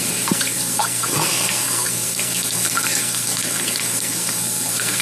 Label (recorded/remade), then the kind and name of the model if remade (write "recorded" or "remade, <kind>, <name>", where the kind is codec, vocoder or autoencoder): remade, codec, SNAC